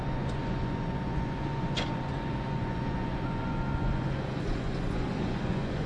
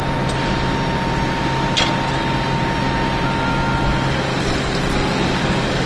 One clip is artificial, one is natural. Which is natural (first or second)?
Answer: second